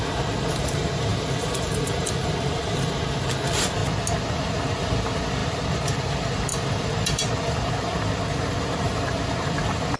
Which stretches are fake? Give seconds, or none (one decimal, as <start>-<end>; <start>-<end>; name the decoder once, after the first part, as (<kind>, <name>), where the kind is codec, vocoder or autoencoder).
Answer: 0.0-3.8 (vocoder, BigVGAN v2); 4.3-10.0